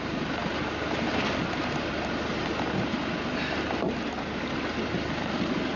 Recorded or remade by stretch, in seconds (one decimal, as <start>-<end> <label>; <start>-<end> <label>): 0.0-0.4 recorded; 0.4-1.1 remade; 1.1-5.8 recorded